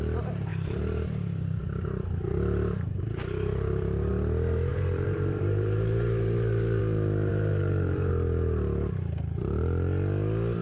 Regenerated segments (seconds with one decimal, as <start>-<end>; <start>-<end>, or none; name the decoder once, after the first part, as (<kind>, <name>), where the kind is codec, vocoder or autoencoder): 0.5-4.1 (vocoder, BigVGAN v2); 4.7-6.8; 7.3-8.1